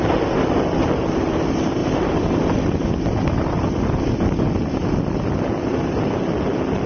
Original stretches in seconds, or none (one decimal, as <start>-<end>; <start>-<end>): 0.0-6.9